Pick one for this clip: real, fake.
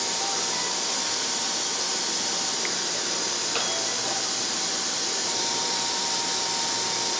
fake